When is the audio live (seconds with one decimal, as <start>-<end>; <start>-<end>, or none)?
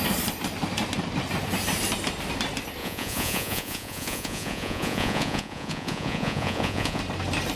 0.0-2.8; 7.0-7.6